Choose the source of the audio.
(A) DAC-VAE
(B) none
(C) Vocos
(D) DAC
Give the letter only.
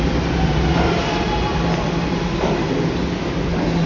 B